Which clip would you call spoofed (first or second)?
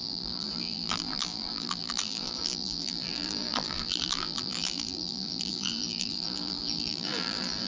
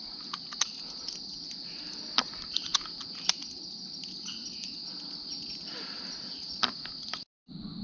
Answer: first